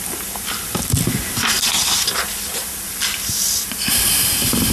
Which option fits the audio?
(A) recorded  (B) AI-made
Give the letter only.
B